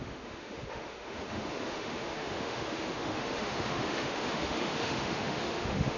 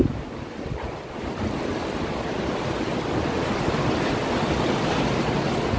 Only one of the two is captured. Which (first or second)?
second